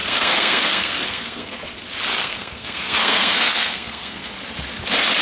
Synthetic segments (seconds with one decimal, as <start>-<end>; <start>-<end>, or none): 0.0-1.6; 2.1-4.3